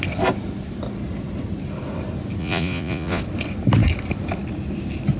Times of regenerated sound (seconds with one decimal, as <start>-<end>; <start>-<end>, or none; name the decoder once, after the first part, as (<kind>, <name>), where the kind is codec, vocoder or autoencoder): 2.4-3.2 (vocoder, Vocos)